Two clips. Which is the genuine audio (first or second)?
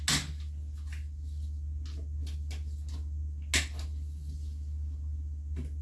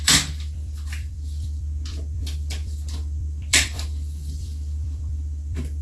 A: first